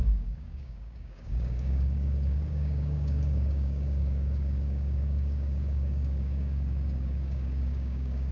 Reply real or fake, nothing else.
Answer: fake